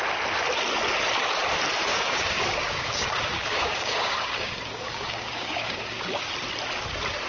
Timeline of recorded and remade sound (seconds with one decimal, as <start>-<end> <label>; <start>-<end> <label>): 0.0-1.9 recorded; 1.9-6.3 remade; 6.3-7.3 recorded